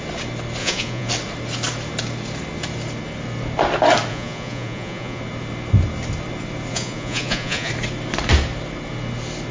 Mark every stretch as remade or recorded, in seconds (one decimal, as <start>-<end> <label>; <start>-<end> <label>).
0.0-0.6 recorded; 0.6-1.1 remade; 1.1-4.1 recorded; 4.1-5.2 remade; 5.2-6.7 recorded; 6.7-7.7 remade; 7.7-9.5 recorded